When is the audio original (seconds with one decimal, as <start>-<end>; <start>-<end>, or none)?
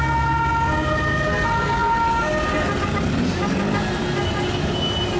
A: 0.0-5.2